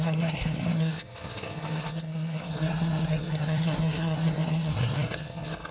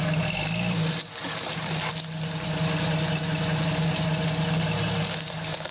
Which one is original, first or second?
second